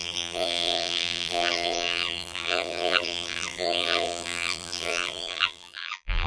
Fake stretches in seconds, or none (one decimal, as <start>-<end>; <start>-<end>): 0.0-6.3